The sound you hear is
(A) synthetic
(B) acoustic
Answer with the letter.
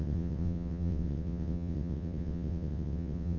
A